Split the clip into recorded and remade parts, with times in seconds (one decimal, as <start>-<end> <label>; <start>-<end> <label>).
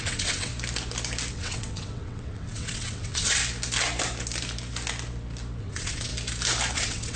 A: 0.0-0.5 remade; 0.5-1.3 recorded; 1.3-3.4 remade; 3.4-5.6 recorded; 5.6-6.1 remade; 6.1-6.7 recorded; 6.7-7.2 remade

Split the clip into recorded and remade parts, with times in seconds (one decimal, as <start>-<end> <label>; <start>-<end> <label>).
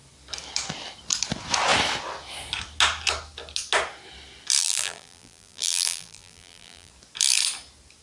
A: 0.0-4.6 recorded; 4.6-6.9 remade; 6.9-8.0 recorded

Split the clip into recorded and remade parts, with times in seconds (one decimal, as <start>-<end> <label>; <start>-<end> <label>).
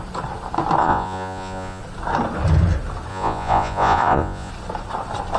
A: 0.0-0.8 recorded; 0.8-1.8 remade; 1.8-3.1 recorded; 3.1-4.5 remade; 4.5-5.4 recorded